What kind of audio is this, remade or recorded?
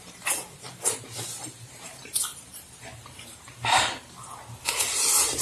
remade